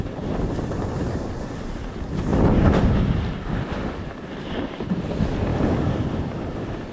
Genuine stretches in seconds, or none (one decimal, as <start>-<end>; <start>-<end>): 0.0-2.3; 3.0-5.5; 6.1-6.9